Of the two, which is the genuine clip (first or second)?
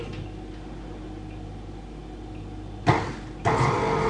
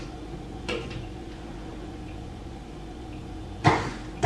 first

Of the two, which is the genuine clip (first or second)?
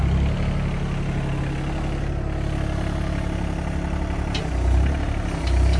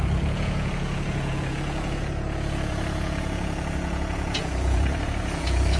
first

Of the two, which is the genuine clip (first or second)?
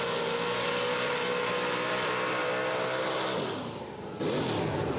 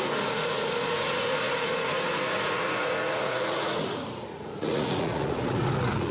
first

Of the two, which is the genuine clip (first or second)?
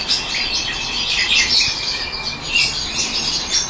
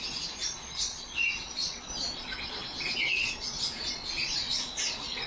first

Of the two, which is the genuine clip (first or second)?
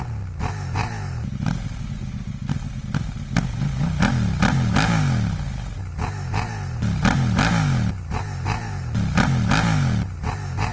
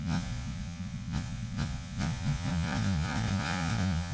first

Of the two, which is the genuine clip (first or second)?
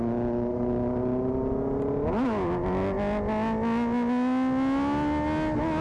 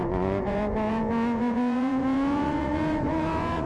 first